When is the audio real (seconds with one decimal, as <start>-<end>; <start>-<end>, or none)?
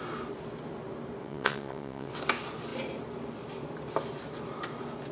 0.0-1.2; 2.2-5.1